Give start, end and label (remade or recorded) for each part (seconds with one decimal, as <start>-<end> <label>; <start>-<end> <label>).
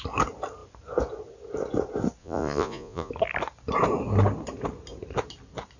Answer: 0.0-2.2 recorded; 2.2-3.1 remade; 3.1-5.8 recorded